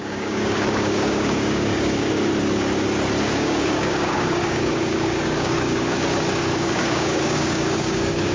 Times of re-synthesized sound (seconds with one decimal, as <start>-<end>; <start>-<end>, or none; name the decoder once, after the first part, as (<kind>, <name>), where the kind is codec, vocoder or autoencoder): 0.0-2.3 (codec, DAC); 3.2-8.3